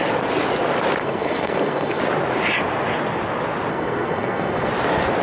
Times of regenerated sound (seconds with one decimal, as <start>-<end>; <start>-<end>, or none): 1.0-2.0; 3.7-4.7